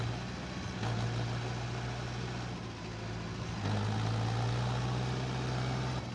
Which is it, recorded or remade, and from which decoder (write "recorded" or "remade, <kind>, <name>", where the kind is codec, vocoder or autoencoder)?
recorded